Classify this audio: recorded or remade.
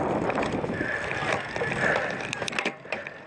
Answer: recorded